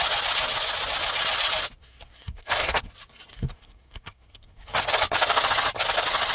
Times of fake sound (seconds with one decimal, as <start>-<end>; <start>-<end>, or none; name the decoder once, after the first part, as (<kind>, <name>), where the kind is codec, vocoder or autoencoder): 1.8-2.9 (codec, SNAC); 3.3-4.9